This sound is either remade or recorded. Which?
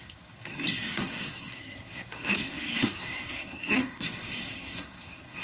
remade